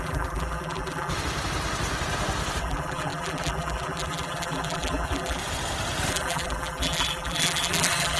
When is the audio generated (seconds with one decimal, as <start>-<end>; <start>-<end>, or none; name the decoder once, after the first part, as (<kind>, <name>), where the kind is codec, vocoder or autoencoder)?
0.0-1.1 (vocoder, BigVGAN v2); 2.6-5.4; 6.1-8.2